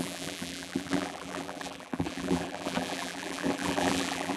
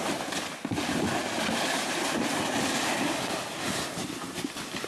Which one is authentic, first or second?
second